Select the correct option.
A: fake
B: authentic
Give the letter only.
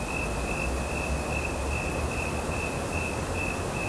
B